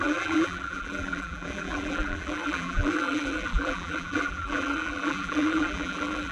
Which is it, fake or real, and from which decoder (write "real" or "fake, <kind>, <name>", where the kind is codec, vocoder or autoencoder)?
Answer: fake, vocoder, BigVGAN v2